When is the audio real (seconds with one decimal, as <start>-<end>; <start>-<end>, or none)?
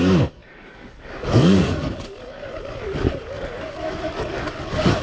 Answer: none